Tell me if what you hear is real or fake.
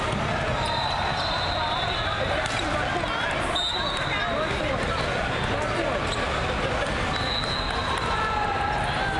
real